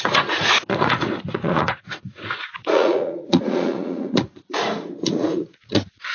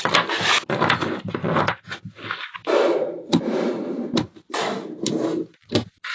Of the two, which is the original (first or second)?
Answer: second